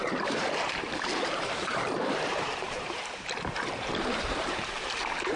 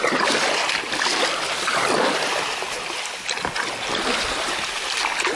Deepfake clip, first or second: first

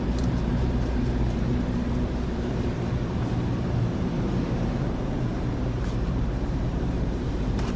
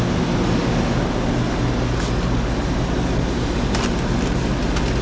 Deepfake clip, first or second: first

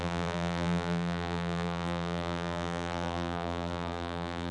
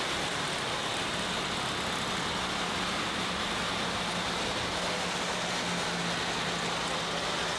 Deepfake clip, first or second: first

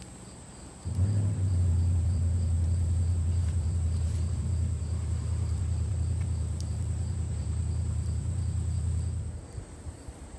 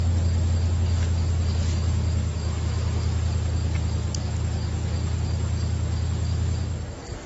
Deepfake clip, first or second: first